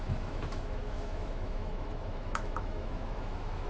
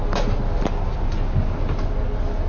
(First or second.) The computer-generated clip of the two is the first